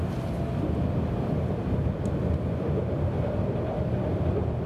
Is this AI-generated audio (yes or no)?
no